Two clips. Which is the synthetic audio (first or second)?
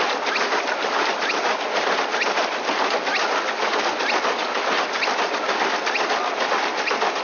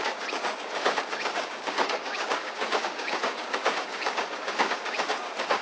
second